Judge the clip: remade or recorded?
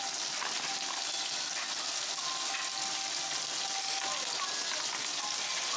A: recorded